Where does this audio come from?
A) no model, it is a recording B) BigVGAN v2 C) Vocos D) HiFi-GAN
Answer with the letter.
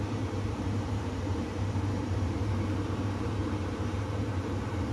B